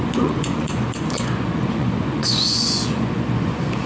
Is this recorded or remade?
remade